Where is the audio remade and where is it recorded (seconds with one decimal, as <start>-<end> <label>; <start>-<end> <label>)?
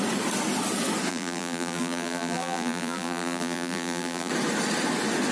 0.0-1.1 recorded; 1.1-4.3 remade; 4.3-5.3 recorded